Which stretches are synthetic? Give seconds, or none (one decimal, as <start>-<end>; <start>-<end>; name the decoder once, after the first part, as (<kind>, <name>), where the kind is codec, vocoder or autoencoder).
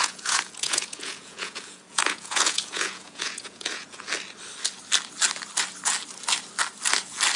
0.0-4.1 (vocoder, Vocos)